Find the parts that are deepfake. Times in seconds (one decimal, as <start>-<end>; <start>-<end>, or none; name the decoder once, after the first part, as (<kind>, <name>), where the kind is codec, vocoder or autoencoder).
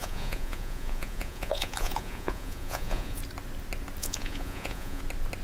0.0-3.2 (vocoder, Vocos); 4.0-5.0